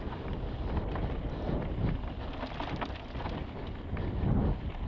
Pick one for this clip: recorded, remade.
recorded